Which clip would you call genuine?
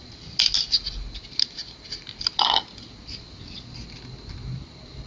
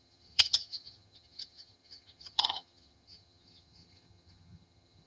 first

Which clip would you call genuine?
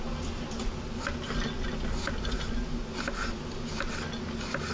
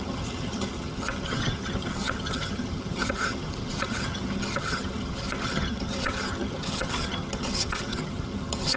first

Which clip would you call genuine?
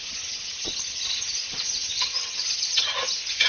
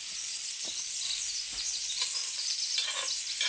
second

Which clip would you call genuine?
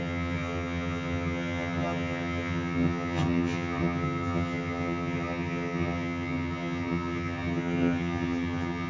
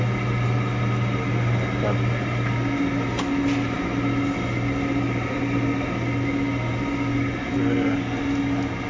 second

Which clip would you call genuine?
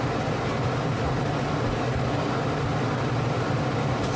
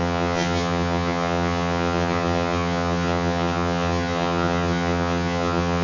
first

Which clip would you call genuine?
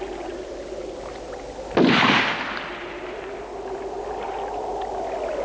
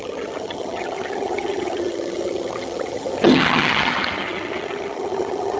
first